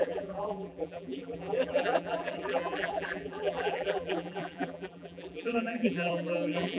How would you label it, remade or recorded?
remade